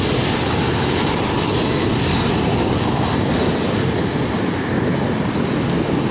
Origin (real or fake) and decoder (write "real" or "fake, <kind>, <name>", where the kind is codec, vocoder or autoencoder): real